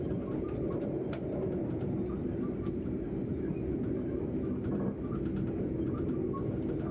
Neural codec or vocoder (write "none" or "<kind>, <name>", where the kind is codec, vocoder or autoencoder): none